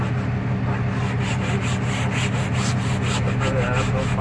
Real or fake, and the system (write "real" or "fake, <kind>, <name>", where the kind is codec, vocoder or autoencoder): real